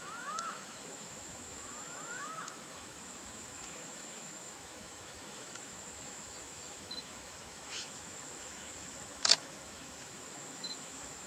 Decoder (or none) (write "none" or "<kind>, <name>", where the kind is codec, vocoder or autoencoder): autoencoder, DAC-VAE